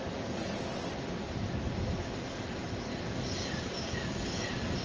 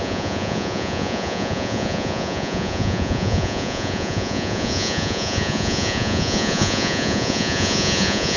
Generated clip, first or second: second